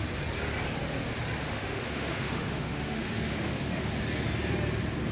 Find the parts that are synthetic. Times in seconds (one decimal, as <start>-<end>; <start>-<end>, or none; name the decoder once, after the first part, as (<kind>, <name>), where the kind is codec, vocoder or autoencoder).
1.4-3.9 (autoencoder, DAC-VAE)